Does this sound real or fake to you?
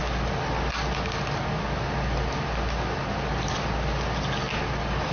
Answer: real